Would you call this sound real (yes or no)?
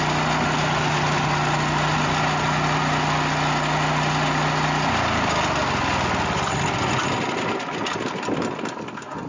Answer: yes